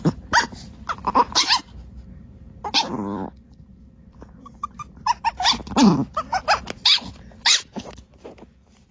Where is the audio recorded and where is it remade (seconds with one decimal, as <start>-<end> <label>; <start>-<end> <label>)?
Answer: 0.0-8.9 recorded